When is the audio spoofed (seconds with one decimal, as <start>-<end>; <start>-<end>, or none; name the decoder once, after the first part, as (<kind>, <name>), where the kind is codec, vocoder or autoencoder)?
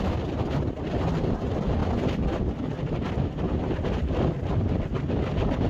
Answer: none